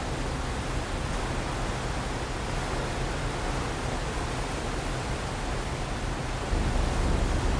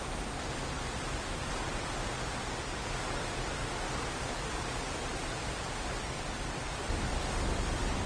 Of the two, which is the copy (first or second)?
second